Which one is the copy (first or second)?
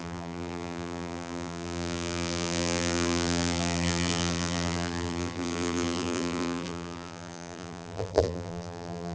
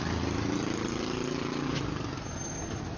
first